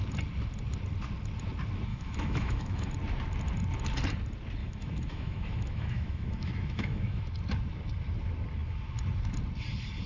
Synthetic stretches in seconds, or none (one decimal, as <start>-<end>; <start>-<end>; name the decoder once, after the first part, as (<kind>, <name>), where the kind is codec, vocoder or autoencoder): 1.9-2.9 (autoencoder, DAC-VAE); 4.6-7.2